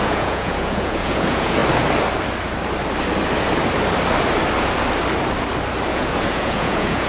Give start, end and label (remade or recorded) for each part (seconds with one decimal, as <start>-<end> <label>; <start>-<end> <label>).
0.0-1.6 remade; 1.6-5.9 recorded; 5.9-7.1 remade